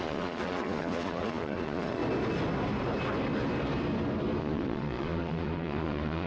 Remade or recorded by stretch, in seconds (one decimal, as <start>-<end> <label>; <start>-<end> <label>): 0.0-2.0 remade; 2.0-4.4 recorded; 4.4-6.3 remade